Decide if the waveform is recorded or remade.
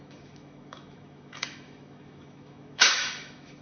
remade